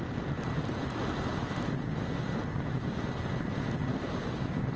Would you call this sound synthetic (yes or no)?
no